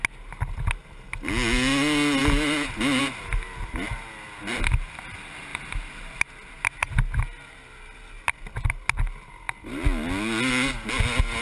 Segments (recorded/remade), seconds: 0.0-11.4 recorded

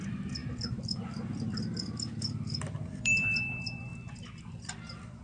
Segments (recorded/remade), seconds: 0.0-3.9 remade; 3.9-4.4 recorded; 4.4-5.2 remade